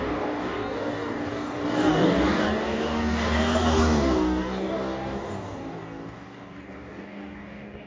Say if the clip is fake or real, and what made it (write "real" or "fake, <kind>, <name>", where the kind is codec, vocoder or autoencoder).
fake, codec, DAC